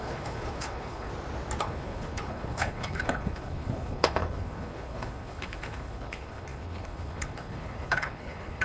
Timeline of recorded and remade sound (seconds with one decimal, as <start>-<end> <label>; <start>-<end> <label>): 0.0-1.1 remade; 1.1-1.6 recorded; 1.6-8.6 remade